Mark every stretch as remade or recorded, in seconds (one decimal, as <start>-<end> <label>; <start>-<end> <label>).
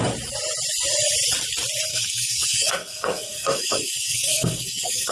0.0-1.9 recorded; 1.9-5.1 remade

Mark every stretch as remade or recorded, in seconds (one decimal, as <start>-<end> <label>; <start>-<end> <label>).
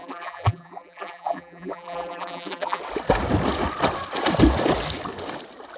0.0-2.8 remade; 2.8-5.8 recorded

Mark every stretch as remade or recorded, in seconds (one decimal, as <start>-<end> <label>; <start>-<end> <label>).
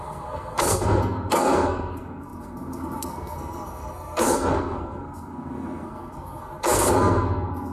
0.0-7.7 remade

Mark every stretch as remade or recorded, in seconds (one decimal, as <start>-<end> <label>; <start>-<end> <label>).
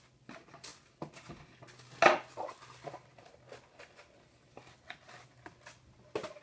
0.0-6.4 recorded